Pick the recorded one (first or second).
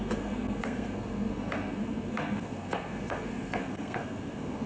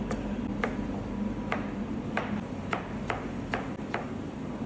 second